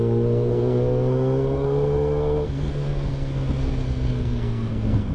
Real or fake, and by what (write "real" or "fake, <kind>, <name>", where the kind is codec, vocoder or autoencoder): fake, codec, SNAC